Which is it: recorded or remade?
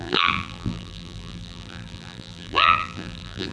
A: remade